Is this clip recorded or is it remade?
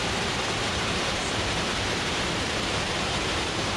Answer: remade